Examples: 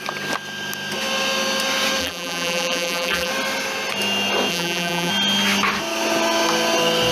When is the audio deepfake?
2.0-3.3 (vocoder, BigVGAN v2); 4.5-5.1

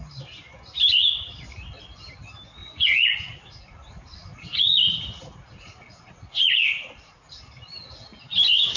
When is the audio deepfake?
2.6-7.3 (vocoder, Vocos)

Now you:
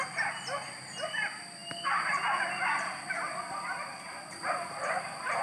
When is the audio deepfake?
none

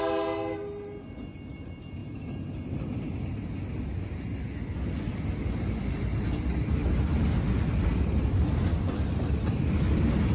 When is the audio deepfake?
none

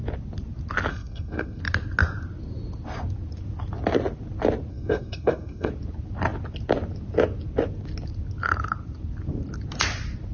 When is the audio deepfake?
0.9-1.6 (codec, SNAC); 4.7-5.7

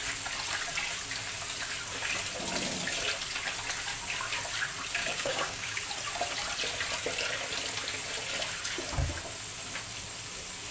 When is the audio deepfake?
5.0-5.8 (codec, DAC)